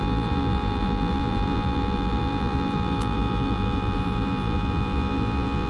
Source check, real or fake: fake